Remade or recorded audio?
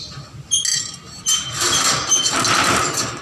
recorded